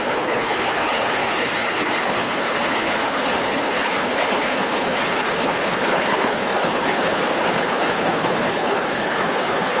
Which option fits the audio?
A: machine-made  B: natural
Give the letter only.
A